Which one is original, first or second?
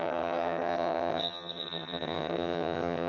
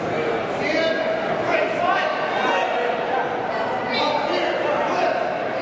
second